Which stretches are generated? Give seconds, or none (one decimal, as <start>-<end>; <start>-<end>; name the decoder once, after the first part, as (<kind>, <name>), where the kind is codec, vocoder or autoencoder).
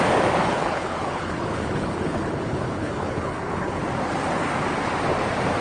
0.4-3.8 (codec, HILCodec)